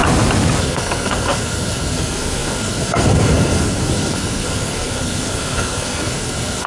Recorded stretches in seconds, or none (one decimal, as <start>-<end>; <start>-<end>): 0.0-0.6